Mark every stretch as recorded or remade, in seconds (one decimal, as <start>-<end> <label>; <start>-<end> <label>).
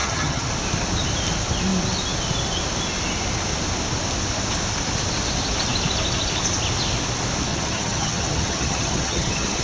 0.0-0.5 remade; 0.5-7.5 recorded; 7.5-9.6 remade